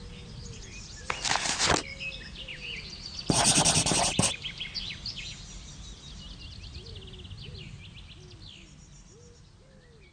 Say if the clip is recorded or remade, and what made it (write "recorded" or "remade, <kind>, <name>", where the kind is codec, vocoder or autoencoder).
recorded